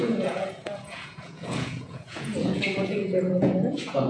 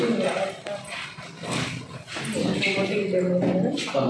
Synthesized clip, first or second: first